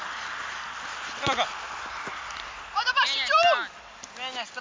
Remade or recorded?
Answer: recorded